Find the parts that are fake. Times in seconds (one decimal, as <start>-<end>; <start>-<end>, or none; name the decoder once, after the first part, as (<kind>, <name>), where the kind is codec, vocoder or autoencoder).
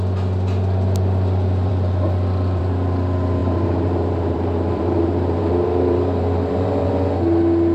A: 3.4-6.9 (vocoder, BigVGAN v2)